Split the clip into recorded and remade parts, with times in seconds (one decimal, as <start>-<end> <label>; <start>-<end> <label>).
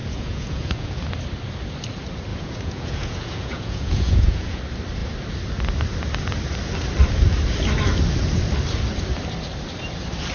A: 0.0-1.0 remade; 1.0-2.3 recorded; 2.3-4.6 remade; 4.6-10.3 recorded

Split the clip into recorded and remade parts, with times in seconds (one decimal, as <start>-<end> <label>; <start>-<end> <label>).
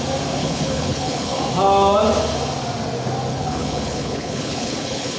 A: 0.0-0.4 recorded; 0.4-1.4 remade; 1.4-3.3 recorded; 3.3-5.2 remade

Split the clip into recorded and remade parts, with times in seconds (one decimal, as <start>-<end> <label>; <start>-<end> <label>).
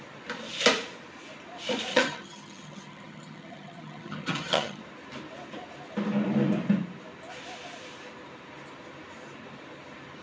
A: 0.0-1.9 recorded; 1.9-4.8 remade; 4.8-10.2 recorded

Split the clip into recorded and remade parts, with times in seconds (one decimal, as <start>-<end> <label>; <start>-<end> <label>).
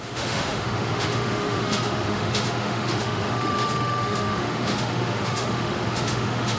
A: 0.0-6.6 remade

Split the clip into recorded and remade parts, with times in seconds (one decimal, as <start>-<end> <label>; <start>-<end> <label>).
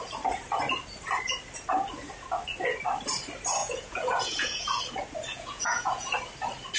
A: 0.0-3.6 recorded; 3.6-4.8 remade; 4.8-5.3 recorded; 5.3-6.2 remade; 6.2-6.8 recorded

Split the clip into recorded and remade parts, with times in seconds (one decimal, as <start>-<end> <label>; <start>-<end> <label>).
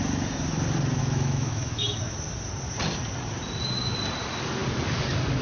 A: 0.0-1.0 recorded; 1.0-2.0 remade; 2.0-5.4 recorded